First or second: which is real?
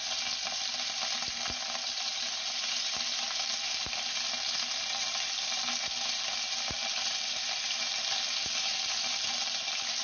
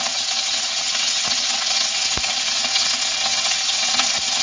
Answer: first